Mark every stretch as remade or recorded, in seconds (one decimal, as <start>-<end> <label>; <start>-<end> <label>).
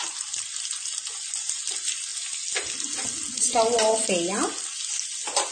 0.0-5.5 recorded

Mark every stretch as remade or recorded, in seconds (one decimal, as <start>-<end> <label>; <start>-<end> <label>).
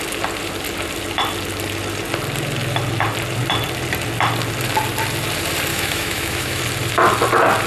0.0-5.7 recorded; 5.7-6.6 remade; 6.6-7.7 recorded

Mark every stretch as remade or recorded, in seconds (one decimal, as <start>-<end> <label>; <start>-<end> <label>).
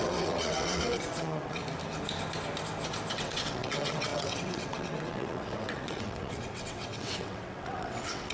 0.0-1.6 remade; 1.6-3.1 recorded; 3.1-8.3 remade